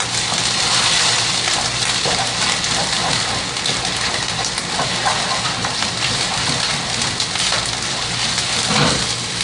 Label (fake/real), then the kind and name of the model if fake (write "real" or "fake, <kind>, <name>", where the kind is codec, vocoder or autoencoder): real